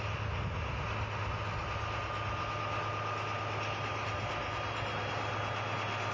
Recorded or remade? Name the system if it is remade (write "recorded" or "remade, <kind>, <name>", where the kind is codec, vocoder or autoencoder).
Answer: recorded